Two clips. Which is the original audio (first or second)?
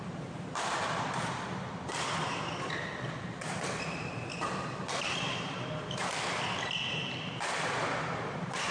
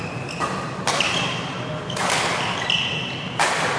second